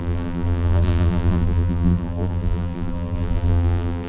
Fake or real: fake